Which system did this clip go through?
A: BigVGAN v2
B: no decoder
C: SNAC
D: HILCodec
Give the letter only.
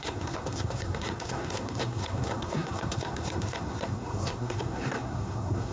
C